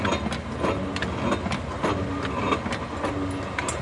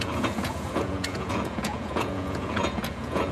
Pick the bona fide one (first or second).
first